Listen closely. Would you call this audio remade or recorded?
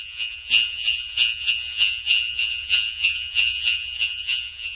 remade